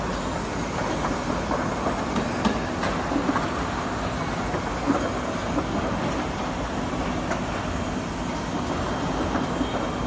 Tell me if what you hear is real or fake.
real